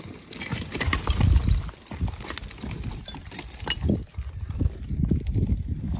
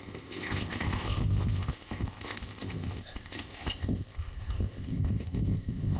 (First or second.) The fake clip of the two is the second